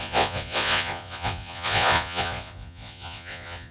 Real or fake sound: fake